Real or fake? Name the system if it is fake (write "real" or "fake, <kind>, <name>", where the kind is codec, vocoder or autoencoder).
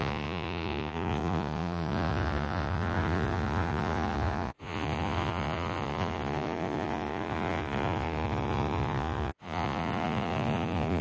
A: fake, vocoder, Vocos